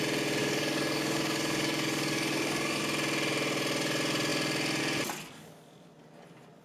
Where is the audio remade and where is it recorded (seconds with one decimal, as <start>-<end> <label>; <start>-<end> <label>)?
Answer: 0.0-0.4 recorded; 0.4-2.8 remade; 2.8-6.6 recorded